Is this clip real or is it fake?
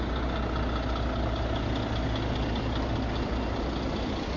real